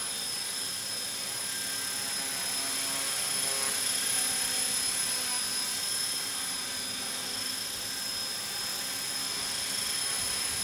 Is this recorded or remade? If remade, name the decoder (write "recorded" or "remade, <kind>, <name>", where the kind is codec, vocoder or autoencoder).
recorded